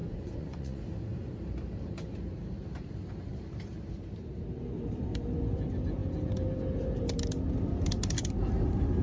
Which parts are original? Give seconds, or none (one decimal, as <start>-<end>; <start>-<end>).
0.8-9.0